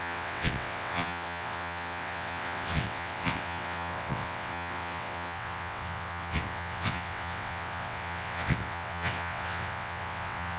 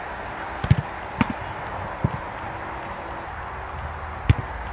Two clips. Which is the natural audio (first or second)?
second